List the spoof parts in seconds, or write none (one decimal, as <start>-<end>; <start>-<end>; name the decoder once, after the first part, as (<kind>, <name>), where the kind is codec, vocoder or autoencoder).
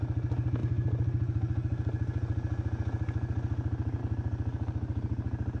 none